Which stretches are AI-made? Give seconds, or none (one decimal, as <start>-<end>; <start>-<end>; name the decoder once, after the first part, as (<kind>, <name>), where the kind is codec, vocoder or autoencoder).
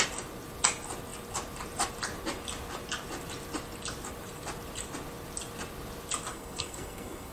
6.3-7.3 (codec, SNAC)